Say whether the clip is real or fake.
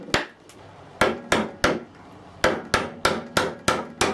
real